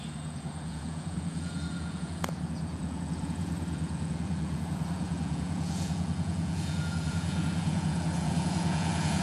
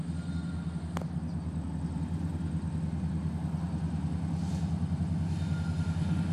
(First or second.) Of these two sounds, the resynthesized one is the first